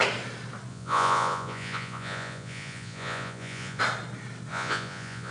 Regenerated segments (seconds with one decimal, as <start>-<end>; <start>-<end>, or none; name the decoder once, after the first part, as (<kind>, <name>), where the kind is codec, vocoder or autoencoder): 0.7-3.8 (vocoder, Vocos); 4.5-5.3